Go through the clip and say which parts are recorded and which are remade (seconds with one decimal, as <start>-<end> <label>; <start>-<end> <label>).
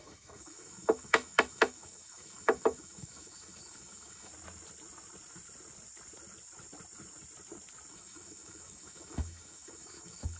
0.0-4.3 remade; 4.3-7.9 recorded; 7.9-10.4 remade